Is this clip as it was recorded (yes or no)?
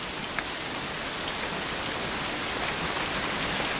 yes